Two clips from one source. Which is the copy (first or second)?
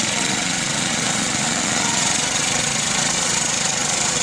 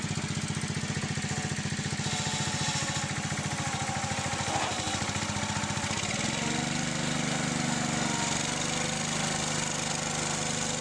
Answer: first